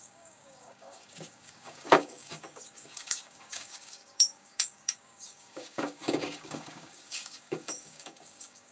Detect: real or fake fake